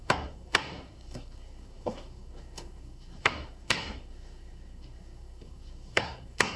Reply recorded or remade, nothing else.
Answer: remade